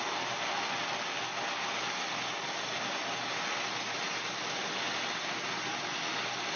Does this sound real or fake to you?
real